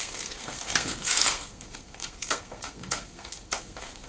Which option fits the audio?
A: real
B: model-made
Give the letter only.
B